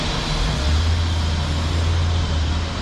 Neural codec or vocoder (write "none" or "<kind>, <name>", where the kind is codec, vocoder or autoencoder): none